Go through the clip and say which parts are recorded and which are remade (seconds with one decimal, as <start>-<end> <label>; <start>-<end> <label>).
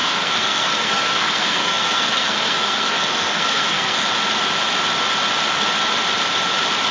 0.0-4.1 remade; 4.1-6.9 recorded